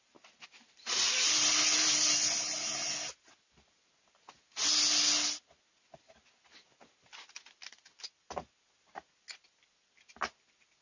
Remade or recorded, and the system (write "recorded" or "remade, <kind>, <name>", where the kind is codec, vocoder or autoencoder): recorded